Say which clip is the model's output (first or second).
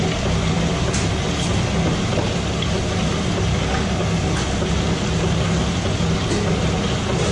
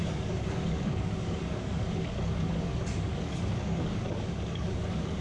second